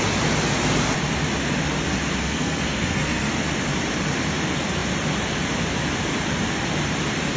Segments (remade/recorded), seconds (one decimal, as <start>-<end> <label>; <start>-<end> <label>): 0.0-2.2 recorded; 2.2-3.3 remade; 3.3-7.4 recorded